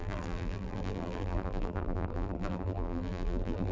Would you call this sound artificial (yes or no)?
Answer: yes